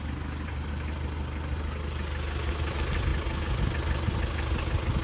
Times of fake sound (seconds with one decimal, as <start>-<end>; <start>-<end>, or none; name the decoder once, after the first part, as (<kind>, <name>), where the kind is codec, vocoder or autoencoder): none